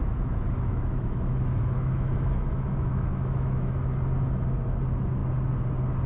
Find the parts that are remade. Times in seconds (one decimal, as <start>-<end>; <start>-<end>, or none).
0.0-3.7